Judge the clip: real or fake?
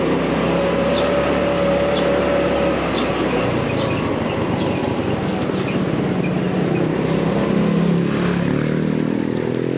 real